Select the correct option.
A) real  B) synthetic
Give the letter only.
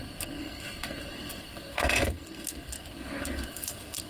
B